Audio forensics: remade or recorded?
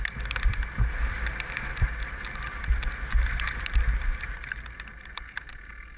recorded